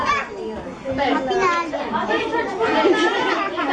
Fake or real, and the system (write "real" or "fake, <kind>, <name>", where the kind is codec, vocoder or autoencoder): fake, vocoder, BigVGAN v2